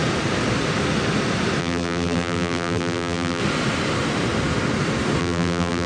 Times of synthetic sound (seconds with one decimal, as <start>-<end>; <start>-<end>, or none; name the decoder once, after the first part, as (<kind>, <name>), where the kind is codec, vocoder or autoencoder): 1.6-3.4 (vocoder, BigVGAN v2); 5.2-5.9